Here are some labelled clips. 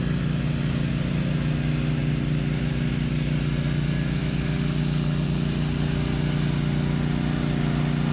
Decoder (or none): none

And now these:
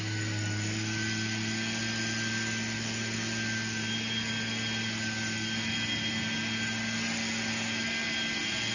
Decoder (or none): none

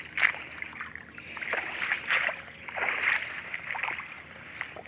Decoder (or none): none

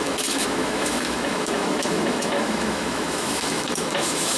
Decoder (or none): autoencoder, DAC-VAE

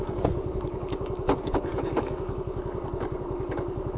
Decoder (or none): codec, DAC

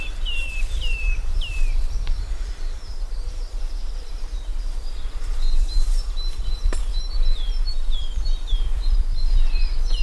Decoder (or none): vocoder, BigVGAN v2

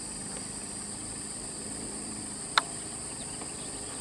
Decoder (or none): vocoder, BigVGAN v2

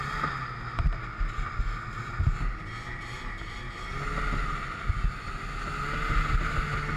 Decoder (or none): none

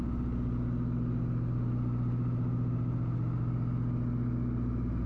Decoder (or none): none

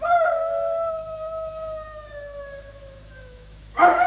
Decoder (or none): autoencoder, DAC-VAE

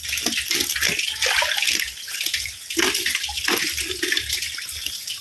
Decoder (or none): none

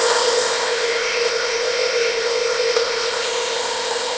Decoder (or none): codec, ZipCodec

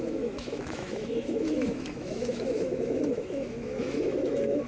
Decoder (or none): autoencoder, DAC-VAE